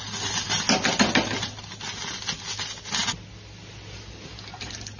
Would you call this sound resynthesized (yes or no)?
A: no